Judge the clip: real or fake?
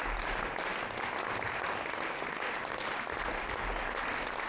real